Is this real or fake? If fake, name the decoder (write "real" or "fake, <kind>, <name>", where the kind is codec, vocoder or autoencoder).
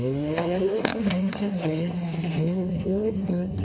fake, codec, SNAC